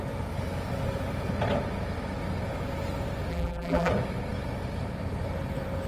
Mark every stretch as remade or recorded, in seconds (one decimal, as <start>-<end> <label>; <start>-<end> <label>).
0.0-3.3 recorded; 3.3-3.9 remade; 3.9-5.9 recorded